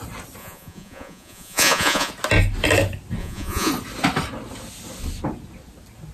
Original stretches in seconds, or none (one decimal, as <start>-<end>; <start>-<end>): 0.0-0.4; 2.1-3.2; 3.7-6.1